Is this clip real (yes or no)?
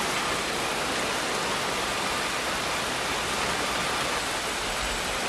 yes